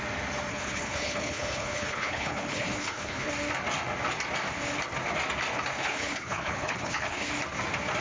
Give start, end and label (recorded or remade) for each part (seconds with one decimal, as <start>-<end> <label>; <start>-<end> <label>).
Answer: 0.0-0.5 recorded; 0.5-3.3 remade; 3.3-5.7 recorded; 5.7-7.3 remade; 7.3-8.0 recorded